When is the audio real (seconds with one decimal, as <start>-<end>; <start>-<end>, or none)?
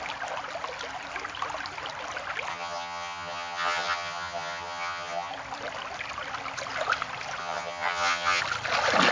0.0-2.5; 5.3-7.4; 8.4-9.1